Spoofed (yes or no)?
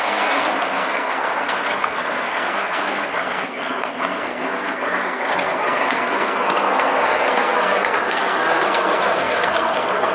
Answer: yes